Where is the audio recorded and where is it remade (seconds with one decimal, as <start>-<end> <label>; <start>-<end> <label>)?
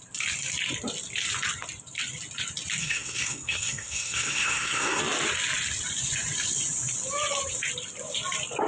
0.0-2.8 recorded; 2.8-5.0 remade; 5.0-8.7 recorded